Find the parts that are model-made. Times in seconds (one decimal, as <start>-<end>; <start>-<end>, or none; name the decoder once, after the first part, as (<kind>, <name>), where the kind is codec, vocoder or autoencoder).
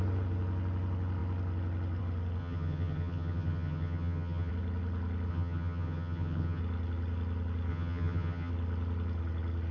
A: 2.4-4.5 (vocoder, HiFi-GAN); 5.3-6.6; 7.7-8.5